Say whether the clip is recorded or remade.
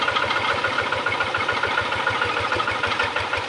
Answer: recorded